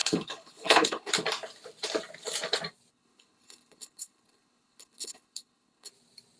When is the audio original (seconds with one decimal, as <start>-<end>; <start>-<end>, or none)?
1.1-2.9; 5.9-6.4